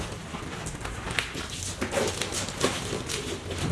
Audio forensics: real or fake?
real